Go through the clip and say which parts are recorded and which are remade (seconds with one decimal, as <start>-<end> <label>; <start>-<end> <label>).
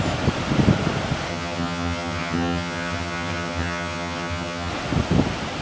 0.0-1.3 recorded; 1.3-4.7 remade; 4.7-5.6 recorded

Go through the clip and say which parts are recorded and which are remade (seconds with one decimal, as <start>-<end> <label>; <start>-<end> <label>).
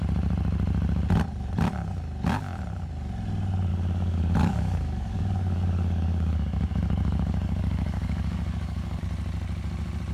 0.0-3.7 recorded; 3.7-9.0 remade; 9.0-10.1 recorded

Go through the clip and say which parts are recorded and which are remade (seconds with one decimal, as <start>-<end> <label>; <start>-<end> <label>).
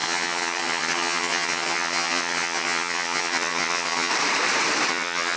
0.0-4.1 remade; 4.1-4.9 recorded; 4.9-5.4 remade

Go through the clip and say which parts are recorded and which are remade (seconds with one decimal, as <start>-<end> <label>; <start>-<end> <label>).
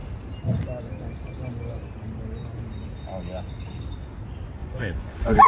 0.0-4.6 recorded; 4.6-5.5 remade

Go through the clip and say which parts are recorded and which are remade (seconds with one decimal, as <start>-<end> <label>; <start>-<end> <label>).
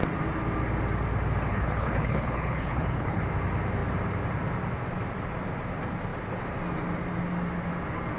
0.0-1.5 recorded; 1.5-3.2 remade; 3.2-8.2 recorded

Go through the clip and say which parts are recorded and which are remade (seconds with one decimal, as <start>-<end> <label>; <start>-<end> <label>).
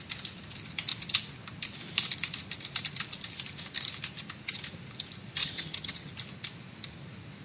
0.0-5.4 recorded; 5.4-6.1 remade; 6.1-7.4 recorded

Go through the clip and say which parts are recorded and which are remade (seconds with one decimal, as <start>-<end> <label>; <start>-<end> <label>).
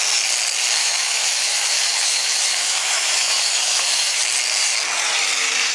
0.0-0.8 recorded; 0.8-4.2 remade; 4.2-5.7 recorded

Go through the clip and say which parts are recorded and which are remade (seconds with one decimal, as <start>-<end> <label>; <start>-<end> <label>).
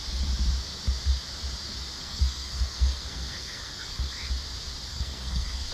0.0-2.0 recorded; 2.0-4.3 remade; 4.3-4.9 recorded; 4.9-5.7 remade